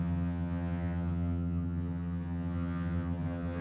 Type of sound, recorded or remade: remade